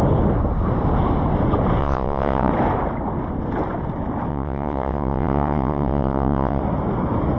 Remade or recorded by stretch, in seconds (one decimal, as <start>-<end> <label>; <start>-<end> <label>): 0.0-1.8 recorded; 1.8-2.5 remade; 2.5-4.3 recorded; 4.3-6.6 remade; 6.6-7.4 recorded